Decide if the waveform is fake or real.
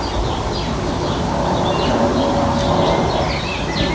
real